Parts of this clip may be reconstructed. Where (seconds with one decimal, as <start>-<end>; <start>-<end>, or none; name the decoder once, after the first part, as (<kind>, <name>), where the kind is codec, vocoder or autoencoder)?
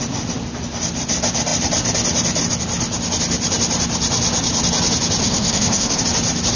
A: 5.2-6.0 (codec, SNAC)